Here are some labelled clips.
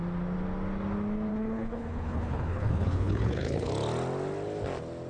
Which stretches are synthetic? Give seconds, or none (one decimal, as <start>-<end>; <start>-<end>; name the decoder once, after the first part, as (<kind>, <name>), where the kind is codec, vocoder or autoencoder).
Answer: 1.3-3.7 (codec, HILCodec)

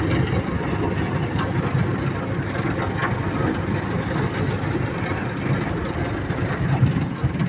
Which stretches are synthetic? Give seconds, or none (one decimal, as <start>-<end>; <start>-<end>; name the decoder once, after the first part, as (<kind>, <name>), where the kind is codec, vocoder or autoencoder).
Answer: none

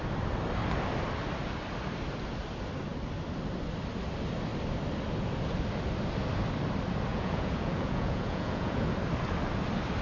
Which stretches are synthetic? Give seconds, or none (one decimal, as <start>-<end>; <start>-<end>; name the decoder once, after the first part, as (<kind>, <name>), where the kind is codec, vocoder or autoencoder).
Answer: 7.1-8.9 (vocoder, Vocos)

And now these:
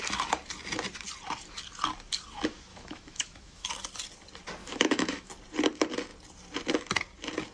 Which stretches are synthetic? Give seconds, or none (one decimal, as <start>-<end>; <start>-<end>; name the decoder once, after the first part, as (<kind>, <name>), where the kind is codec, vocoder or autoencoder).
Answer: 2.7-3.7 (autoencoder, DAC-VAE); 4.6-5.3

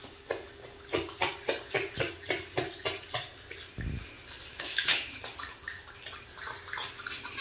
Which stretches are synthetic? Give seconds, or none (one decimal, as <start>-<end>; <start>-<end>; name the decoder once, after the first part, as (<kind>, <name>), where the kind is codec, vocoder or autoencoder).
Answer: 4.5-5.2 (autoencoder, DAC-VAE)

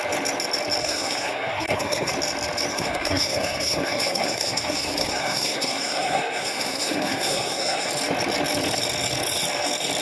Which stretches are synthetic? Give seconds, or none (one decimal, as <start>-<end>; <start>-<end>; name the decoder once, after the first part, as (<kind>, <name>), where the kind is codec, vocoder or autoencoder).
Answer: 0.8-2.1 (codec, SNAC); 2.7-7.9

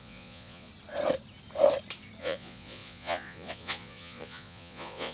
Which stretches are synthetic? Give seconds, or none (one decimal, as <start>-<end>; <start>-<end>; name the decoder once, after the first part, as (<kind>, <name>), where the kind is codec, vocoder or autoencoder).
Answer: 0.0-0.7 (vocoder, Vocos); 2.2-5.1

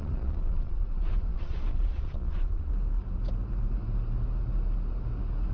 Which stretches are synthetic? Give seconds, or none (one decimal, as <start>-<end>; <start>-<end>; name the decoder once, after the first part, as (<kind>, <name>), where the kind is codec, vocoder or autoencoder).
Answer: 0.0-2.7 (vocoder, Vocos)